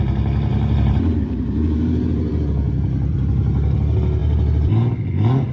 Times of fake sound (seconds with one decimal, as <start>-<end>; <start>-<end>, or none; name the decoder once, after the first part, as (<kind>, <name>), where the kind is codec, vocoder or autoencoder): 0.5-2.4 (vocoder, BigVGAN v2)